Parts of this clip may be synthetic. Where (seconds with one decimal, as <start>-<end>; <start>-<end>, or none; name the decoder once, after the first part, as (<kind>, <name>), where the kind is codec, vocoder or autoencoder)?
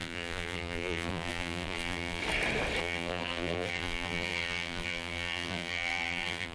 0.0-2.2 (vocoder, BigVGAN v2); 2.8-6.5